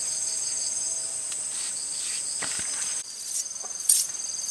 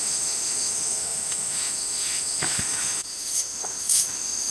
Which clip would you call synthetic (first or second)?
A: second